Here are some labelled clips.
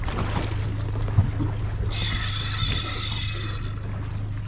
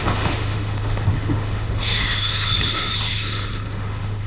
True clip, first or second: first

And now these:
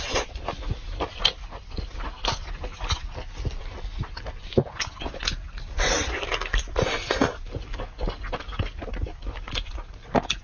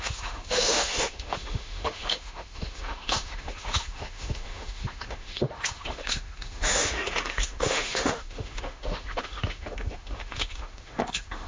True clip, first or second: first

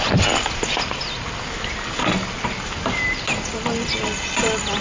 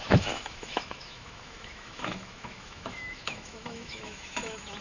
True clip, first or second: first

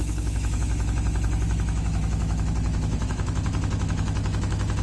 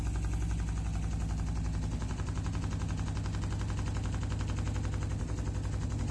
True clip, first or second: second